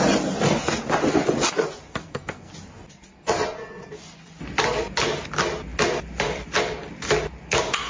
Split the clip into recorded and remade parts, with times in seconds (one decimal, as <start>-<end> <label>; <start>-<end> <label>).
0.0-2.0 recorded; 2.0-2.5 remade; 2.5-7.9 recorded